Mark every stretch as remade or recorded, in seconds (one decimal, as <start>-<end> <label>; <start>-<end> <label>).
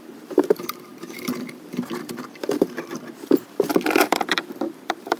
0.0-5.2 remade